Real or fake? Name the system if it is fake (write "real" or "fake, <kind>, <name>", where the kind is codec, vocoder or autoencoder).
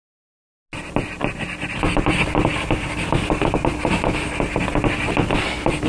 real